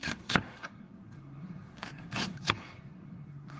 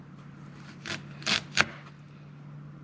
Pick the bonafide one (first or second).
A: second